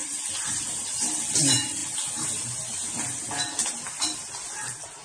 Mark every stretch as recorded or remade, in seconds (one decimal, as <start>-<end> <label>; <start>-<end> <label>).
0.0-5.0 recorded